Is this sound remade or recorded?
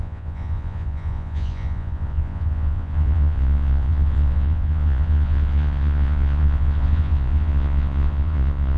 remade